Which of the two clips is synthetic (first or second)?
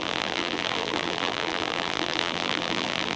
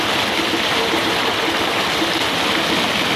first